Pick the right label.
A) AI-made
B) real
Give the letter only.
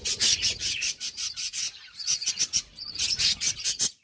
A